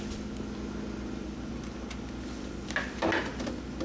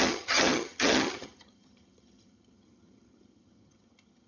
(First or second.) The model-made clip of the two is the second